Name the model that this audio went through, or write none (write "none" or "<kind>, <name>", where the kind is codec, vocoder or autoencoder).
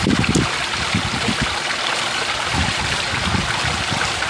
none